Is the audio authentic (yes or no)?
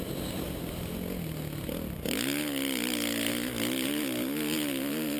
yes